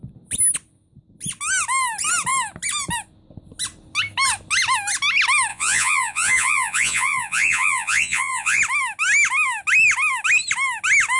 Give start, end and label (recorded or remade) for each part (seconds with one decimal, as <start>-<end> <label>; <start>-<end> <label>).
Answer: 0.0-5.5 recorded; 5.5-8.6 remade; 8.6-11.2 recorded